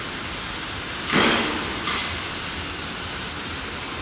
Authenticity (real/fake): real